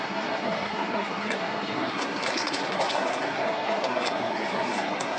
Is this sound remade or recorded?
remade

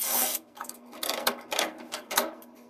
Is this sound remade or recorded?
remade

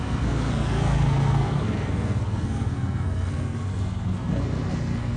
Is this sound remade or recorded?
remade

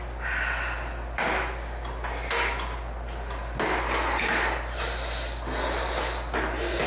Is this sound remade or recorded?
recorded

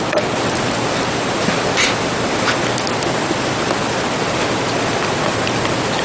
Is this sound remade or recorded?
recorded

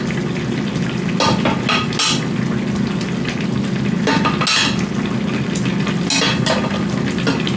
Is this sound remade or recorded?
recorded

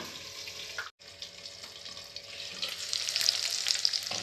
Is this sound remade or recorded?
recorded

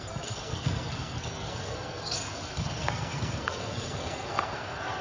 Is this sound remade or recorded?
remade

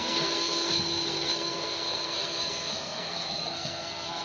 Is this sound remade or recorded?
remade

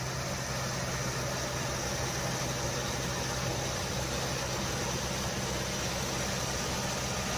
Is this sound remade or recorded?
recorded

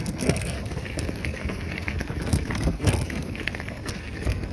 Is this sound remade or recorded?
remade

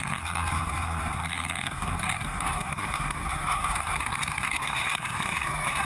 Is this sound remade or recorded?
remade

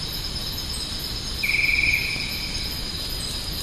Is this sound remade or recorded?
recorded